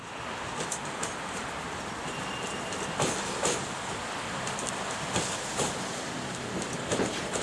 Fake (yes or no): yes